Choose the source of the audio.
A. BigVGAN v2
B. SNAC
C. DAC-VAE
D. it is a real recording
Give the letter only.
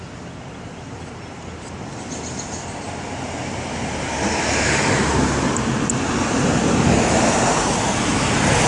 D